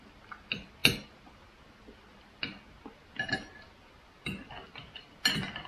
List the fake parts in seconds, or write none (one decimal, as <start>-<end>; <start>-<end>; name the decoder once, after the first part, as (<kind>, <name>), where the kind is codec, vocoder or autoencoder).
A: none